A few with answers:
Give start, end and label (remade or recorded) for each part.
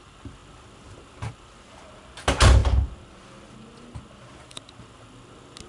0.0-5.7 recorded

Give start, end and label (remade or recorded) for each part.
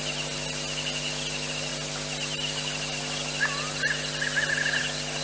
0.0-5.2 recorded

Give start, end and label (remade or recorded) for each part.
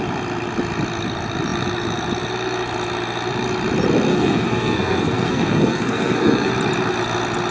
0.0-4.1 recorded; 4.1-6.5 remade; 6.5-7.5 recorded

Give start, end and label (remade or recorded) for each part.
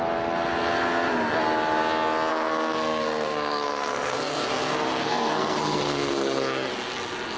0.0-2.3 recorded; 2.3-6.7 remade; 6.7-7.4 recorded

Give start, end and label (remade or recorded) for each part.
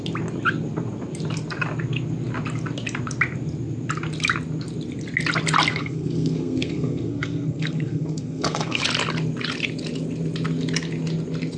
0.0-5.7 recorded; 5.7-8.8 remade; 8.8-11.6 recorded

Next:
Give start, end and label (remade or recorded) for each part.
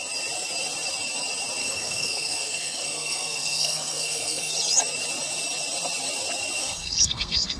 0.0-1.6 recorded; 1.6-4.5 remade; 4.5-6.6 recorded; 6.6-7.6 remade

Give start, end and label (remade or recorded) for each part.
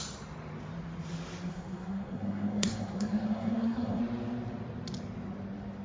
0.0-1.5 recorded; 1.5-4.0 remade; 4.0-5.8 recorded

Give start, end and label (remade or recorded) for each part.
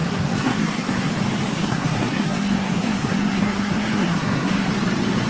0.0-1.1 remade; 1.1-1.5 recorded; 1.5-4.7 remade; 4.7-5.3 recorded